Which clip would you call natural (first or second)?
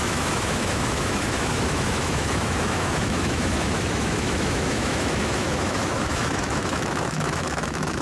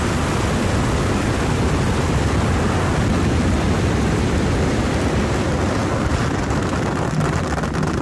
second